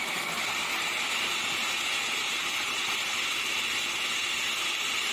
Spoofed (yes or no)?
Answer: no